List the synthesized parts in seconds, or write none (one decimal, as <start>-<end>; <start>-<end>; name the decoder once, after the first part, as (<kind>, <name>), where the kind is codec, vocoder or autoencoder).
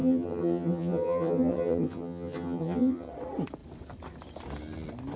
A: 0.0-3.1 (vocoder, HiFi-GAN)